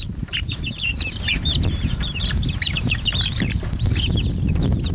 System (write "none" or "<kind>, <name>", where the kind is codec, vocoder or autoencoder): vocoder, BigVGAN v2